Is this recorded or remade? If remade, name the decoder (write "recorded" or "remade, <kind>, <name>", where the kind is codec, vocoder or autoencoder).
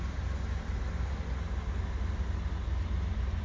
recorded